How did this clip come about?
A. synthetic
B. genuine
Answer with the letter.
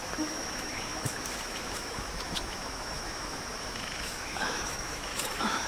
A